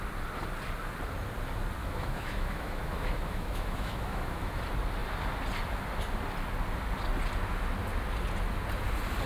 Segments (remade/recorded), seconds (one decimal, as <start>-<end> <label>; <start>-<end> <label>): 0.0-1.8 recorded; 1.8-4.6 remade; 4.6-9.3 recorded